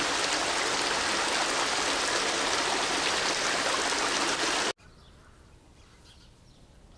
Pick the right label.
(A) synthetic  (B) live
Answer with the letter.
B